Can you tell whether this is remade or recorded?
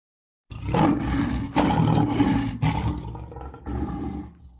recorded